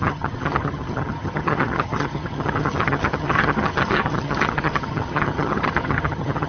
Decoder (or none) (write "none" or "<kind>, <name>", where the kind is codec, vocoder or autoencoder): vocoder, HiFi-GAN